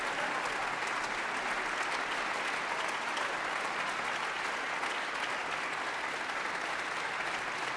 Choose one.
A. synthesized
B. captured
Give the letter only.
B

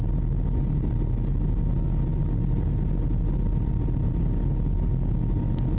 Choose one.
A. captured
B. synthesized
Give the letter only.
A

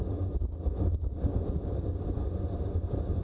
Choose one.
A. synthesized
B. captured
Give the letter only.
B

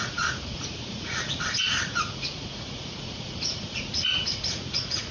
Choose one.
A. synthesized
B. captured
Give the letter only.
A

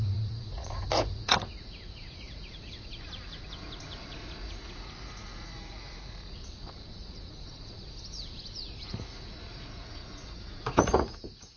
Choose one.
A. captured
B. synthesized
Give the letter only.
B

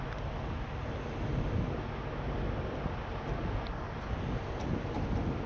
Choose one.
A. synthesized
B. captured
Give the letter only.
B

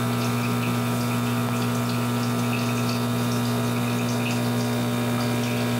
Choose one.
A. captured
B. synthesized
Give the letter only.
A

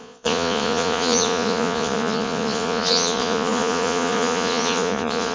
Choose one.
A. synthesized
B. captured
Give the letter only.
A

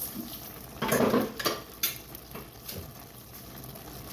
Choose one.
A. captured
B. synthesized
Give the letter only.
A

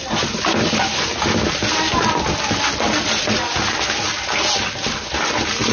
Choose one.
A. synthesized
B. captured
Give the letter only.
B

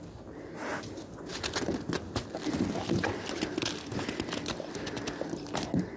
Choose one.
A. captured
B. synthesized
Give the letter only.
A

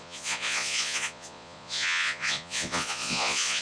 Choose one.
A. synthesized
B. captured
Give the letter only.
A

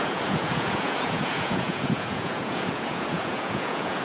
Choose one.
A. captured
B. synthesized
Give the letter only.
B